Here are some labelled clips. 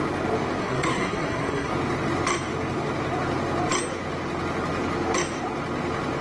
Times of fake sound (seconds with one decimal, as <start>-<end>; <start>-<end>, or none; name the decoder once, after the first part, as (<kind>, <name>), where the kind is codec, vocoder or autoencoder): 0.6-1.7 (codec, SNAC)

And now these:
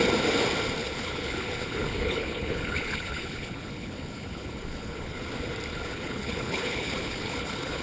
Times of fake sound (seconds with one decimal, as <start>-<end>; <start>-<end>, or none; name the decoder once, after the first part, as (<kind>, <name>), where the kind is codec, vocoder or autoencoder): 0.8-5.2 (codec, HILCodec); 5.7-7.8

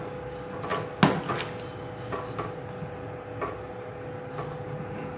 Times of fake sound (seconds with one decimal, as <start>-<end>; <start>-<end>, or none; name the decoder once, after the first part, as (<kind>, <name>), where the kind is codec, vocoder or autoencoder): none

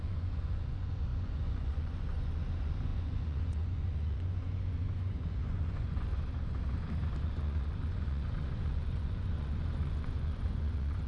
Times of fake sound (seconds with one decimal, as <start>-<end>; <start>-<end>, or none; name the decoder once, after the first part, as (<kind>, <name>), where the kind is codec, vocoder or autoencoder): 0.0-6.1 (vocoder, Vocos); 7.2-11.1